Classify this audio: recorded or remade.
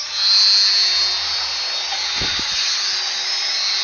recorded